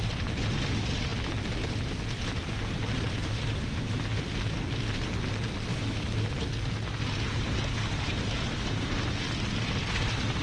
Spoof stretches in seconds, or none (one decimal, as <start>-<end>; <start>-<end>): 5.7-6.4

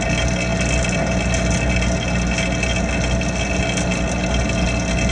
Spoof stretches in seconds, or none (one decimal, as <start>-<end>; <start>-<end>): none

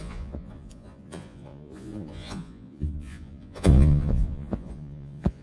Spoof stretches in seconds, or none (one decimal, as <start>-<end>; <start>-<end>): 0.0-5.4

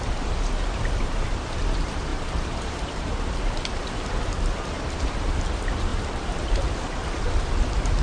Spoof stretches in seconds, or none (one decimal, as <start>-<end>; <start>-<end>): 5.9-7.1

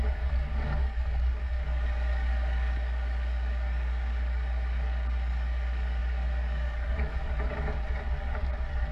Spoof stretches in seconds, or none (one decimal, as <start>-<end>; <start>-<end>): 0.0-8.9